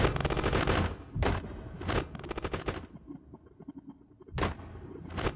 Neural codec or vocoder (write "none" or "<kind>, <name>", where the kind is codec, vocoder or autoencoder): none